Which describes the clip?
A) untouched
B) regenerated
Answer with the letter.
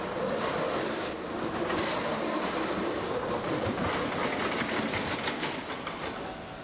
A